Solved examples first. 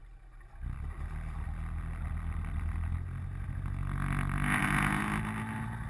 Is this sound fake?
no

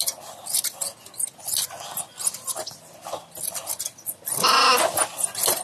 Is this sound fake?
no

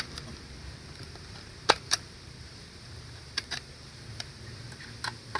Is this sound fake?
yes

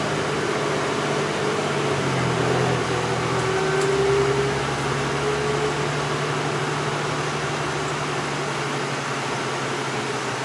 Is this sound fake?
no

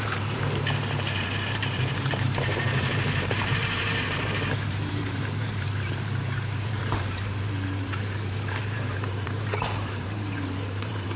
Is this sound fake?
yes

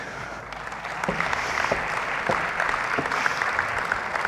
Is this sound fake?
no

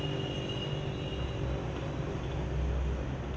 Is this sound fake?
no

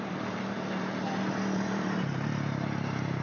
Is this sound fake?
yes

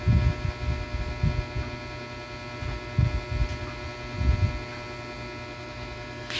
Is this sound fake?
no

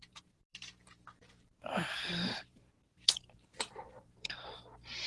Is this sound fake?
yes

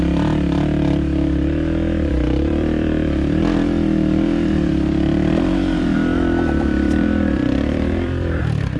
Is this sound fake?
yes